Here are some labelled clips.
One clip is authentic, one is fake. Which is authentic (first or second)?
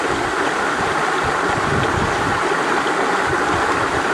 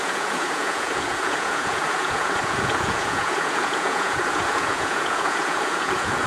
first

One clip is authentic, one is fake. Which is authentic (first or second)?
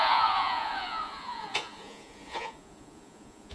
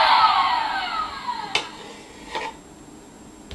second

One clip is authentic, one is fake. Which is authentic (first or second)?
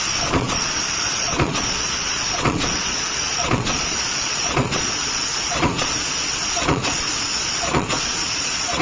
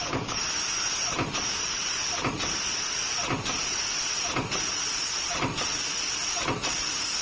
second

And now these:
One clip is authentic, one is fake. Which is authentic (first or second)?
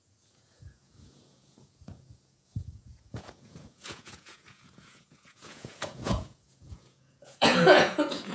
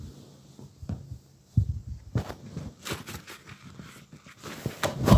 second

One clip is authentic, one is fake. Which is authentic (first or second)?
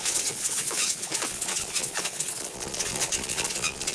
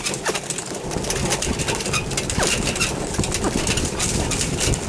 second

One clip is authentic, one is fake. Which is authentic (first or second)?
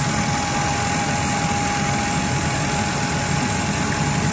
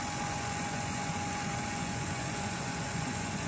first